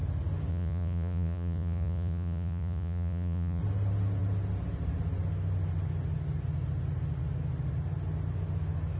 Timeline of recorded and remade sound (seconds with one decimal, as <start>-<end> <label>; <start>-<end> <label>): 0.0-0.5 recorded; 0.5-3.6 remade; 3.6-9.0 recorded